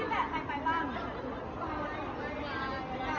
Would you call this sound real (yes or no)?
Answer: yes